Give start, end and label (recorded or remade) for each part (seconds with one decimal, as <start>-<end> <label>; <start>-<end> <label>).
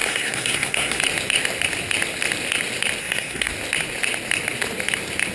0.0-1.0 remade; 1.0-3.0 recorded; 3.0-3.5 remade; 3.5-5.3 recorded